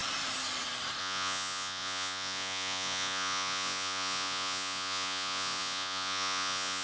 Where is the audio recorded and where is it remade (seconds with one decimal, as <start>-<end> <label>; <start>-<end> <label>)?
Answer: 0.0-1.0 recorded; 1.0-6.8 remade